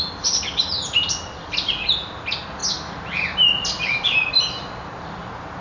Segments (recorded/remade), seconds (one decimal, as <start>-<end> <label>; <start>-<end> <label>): 0.0-5.6 recorded